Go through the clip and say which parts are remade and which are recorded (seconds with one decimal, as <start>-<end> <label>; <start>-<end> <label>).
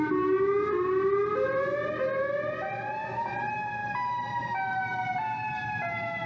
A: 0.0-6.3 recorded